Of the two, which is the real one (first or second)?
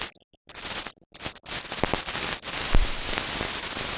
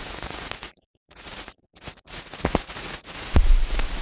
first